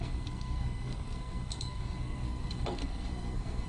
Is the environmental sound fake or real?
fake